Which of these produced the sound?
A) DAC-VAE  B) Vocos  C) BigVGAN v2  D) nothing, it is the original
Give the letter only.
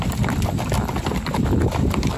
D